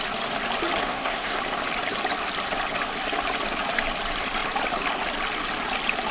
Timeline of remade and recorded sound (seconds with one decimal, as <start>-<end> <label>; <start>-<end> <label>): 0.0-0.8 recorded; 0.8-1.4 remade; 1.4-6.1 recorded